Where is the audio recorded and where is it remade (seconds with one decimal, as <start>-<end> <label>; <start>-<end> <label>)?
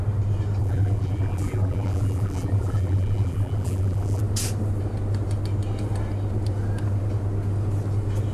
0.0-0.6 recorded; 0.6-4.2 remade; 4.2-8.3 recorded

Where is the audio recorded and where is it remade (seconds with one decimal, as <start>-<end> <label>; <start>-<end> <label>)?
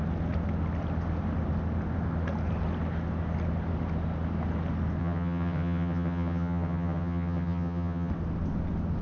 0.0-5.0 recorded; 5.0-8.1 remade; 8.1-9.0 recorded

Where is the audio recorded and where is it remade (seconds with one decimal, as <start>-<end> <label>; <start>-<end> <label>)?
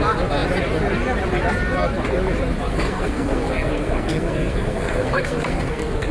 0.0-2.7 recorded; 2.7-6.1 remade